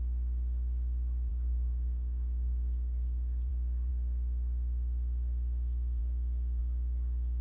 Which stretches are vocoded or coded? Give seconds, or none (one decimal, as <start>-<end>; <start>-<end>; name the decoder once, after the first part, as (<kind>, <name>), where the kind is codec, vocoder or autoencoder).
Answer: 1.3-3.5 (codec, DAC)